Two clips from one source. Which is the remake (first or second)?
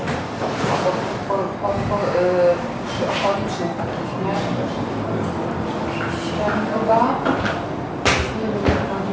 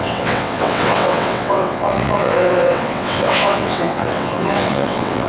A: second